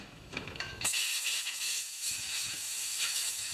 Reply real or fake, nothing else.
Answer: fake